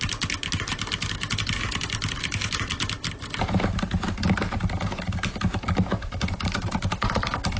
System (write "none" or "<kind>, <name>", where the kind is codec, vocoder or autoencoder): none